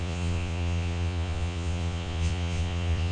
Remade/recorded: remade